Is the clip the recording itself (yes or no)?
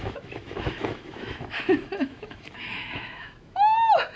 no